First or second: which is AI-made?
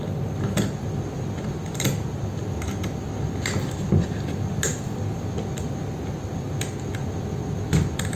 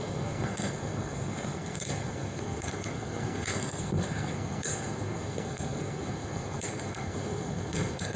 second